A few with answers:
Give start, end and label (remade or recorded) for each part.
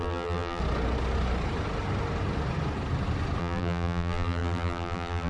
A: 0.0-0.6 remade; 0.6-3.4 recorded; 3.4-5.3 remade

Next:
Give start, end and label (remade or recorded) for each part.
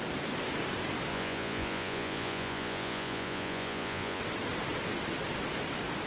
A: 0.0-1.1 recorded; 1.1-4.2 remade; 4.2-6.1 recorded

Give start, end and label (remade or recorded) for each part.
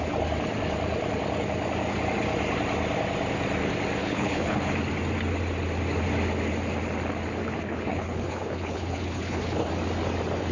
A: 0.0-4.0 recorded; 4.0-4.7 remade; 4.7-7.4 recorded; 7.4-9.7 remade; 9.7-10.5 recorded